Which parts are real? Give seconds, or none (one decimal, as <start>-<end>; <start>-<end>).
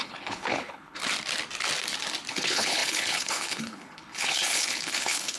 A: 1.0-2.3